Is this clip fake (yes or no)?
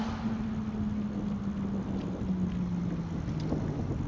no